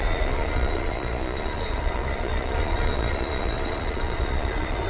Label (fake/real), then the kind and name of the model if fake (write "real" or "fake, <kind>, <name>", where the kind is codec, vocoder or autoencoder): fake, vocoder, Vocos